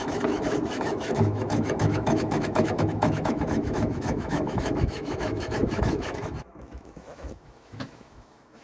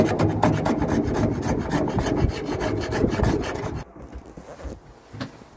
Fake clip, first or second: first